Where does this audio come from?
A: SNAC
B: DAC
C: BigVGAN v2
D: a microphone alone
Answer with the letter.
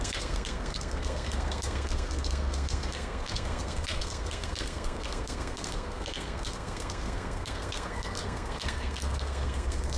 A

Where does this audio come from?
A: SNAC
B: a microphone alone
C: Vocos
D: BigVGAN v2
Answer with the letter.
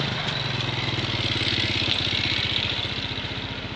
B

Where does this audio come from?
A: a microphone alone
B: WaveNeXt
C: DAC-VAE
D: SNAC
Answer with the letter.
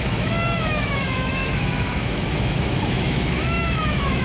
C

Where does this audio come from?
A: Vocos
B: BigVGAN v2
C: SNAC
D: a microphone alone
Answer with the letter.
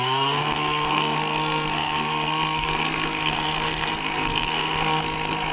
C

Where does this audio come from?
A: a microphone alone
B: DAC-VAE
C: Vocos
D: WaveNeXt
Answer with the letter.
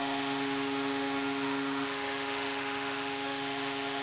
B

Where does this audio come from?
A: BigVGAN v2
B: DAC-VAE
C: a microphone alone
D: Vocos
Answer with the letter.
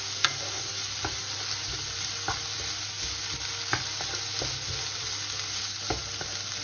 C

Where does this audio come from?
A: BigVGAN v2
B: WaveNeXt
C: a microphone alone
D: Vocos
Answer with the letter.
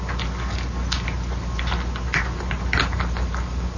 C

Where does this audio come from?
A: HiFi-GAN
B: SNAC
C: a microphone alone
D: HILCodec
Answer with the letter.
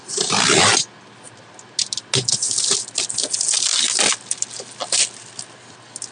C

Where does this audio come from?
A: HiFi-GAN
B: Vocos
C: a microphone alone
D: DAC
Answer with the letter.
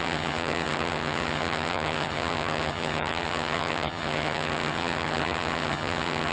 A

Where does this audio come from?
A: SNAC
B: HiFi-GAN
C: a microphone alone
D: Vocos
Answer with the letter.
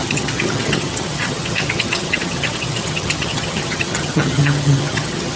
B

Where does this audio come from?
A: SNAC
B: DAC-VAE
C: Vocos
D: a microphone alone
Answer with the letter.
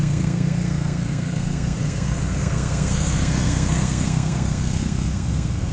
A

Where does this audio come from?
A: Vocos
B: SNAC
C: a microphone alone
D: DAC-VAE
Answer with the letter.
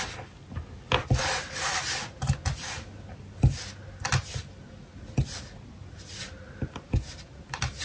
C